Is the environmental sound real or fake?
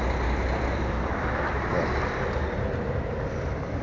fake